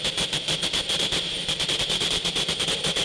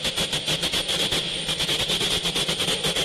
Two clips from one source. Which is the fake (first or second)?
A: first